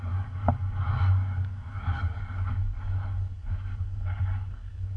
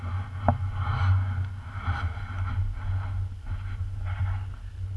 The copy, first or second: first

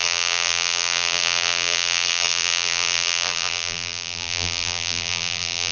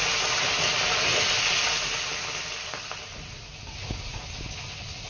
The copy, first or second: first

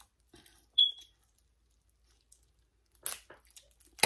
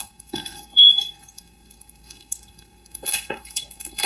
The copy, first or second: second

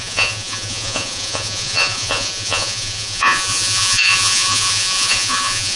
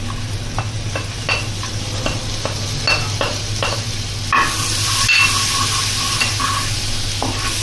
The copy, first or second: first